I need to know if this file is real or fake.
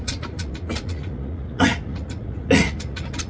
fake